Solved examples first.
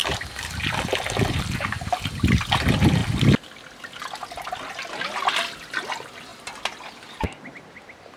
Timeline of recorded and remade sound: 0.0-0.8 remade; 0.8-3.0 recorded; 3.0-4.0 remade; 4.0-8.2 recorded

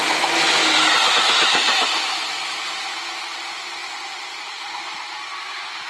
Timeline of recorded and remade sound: 0.0-5.9 recorded

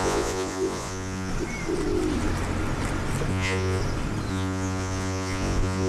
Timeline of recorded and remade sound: 0.0-1.3 remade; 1.3-3.3 recorded; 3.3-3.8 remade; 3.8-4.3 recorded; 4.3-5.9 remade

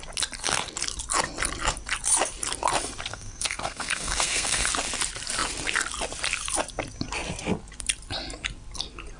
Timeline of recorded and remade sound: 0.0-3.1 recorded; 3.1-4.7 remade; 4.7-9.2 recorded